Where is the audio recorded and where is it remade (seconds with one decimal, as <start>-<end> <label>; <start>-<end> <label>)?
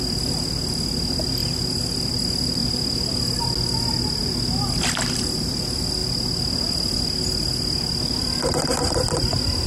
0.0-1.4 recorded; 1.4-2.1 remade; 2.1-2.6 recorded; 2.6-3.4 remade; 3.4-9.7 recorded